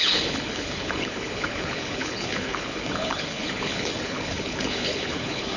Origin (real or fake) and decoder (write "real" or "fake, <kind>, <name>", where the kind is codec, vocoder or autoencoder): fake, codec, HILCodec